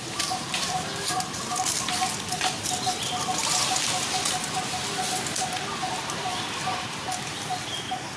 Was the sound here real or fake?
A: real